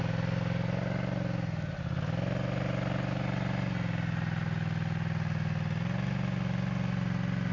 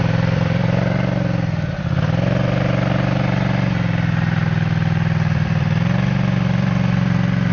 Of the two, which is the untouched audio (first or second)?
first